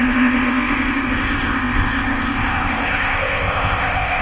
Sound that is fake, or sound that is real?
fake